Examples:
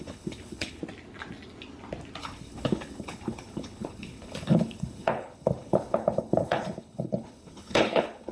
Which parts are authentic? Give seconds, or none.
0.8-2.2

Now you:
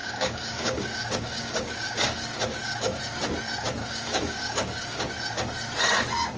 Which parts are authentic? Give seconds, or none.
3.0-3.8; 5.1-6.4

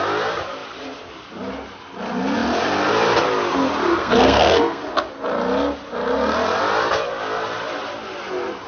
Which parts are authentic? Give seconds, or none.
0.0-4.0; 4.8-8.7